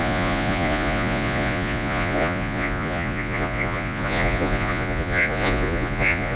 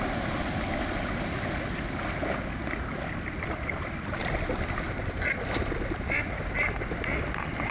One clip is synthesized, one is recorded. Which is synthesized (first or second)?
first